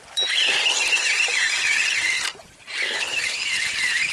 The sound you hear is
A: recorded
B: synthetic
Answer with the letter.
A